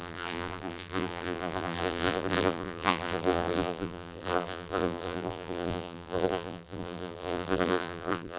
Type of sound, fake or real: fake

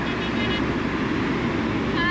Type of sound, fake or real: real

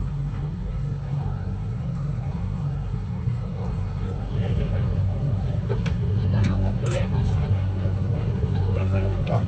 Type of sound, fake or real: fake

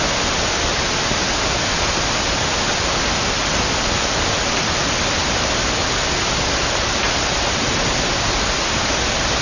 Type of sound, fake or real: real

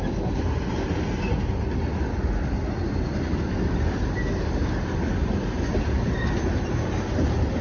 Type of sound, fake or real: real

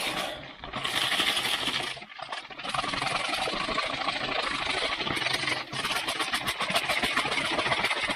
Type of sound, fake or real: real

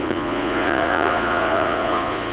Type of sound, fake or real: fake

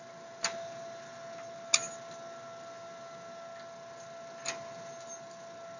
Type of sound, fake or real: real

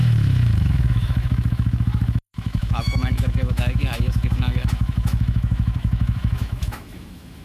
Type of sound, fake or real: fake